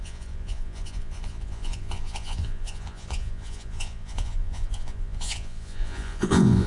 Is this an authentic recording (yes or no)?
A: no